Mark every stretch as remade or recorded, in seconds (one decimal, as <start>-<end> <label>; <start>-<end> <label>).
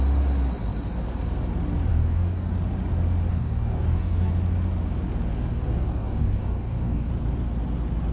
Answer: 0.0-1.9 recorded; 1.9-2.5 remade; 2.5-3.3 recorded; 3.3-4.3 remade; 4.3-5.5 recorded; 5.5-7.1 remade; 7.1-8.1 recorded